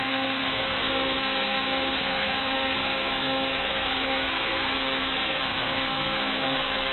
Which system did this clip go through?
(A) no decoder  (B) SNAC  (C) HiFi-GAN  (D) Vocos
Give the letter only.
B